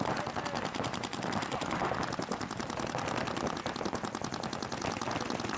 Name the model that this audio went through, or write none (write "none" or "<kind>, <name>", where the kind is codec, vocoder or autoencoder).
none